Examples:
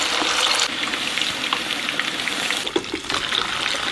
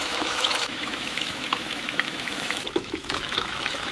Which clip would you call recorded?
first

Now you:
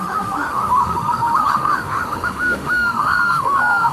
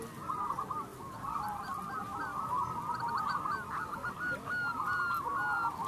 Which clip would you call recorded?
second